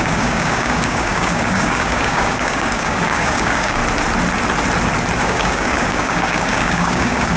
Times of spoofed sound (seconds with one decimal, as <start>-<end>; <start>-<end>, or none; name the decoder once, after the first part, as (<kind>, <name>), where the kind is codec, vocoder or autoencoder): 0.0-3.8 (codec, DAC); 5.2-7.4